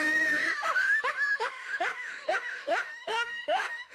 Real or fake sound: fake